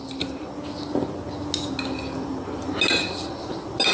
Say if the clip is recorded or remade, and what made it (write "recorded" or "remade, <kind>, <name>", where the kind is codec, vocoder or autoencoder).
recorded